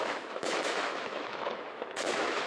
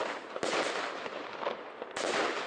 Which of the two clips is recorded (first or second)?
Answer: second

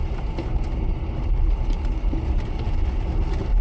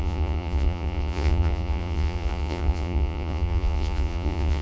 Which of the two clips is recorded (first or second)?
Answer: first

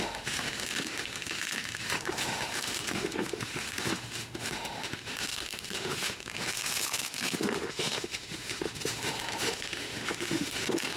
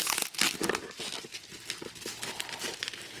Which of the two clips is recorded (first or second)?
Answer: second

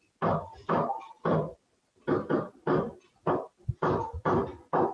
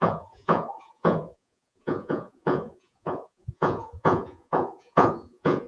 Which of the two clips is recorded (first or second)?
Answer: first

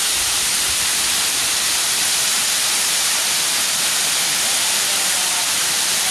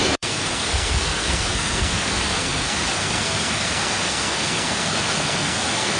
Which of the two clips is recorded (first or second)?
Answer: first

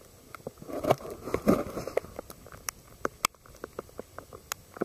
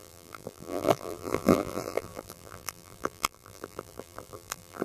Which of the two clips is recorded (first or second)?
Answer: first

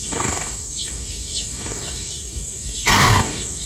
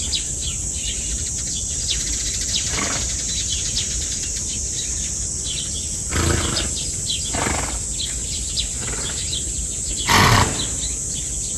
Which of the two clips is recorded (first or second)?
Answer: second